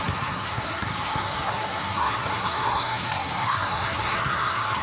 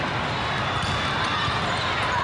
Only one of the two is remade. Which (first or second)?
first